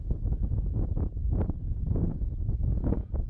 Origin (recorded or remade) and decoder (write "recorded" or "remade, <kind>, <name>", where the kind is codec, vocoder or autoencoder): remade, vocoder, Vocos